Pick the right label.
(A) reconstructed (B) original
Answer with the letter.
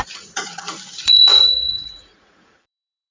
A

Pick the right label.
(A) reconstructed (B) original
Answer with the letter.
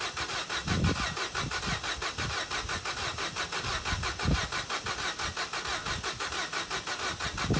B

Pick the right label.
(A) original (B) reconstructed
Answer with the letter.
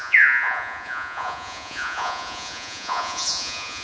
B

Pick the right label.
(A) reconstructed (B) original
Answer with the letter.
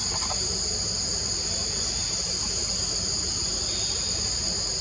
B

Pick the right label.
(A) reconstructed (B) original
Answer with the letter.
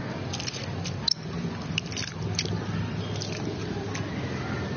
B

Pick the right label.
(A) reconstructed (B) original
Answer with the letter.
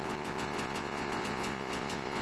A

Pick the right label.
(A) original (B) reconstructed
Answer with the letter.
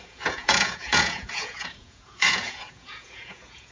B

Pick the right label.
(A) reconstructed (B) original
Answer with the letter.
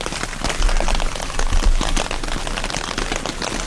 B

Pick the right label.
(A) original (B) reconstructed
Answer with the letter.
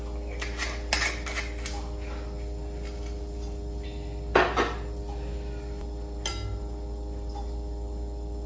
A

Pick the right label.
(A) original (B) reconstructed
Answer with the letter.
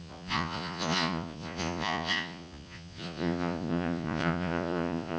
B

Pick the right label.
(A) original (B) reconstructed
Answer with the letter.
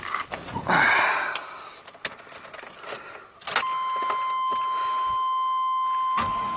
A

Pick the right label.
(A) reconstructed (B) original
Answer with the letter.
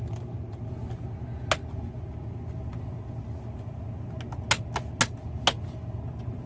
B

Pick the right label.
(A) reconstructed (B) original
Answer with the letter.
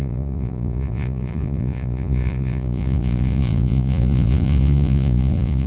A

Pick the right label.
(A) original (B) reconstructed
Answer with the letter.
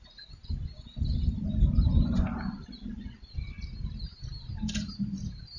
A